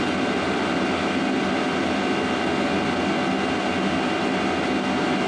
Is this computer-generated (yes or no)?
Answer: no